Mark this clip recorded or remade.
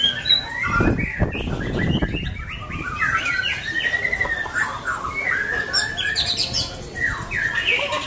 recorded